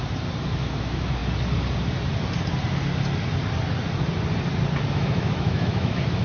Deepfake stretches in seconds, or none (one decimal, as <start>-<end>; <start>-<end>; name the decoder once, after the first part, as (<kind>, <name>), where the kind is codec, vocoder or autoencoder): 0.6-1.2 (autoencoder, DAC-VAE); 4.9-6.2